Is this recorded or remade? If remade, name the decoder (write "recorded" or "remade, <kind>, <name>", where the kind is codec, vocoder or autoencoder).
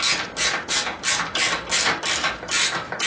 recorded